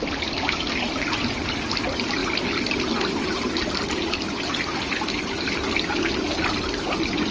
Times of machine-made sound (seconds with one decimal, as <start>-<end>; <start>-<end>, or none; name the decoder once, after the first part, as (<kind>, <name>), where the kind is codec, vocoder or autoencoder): none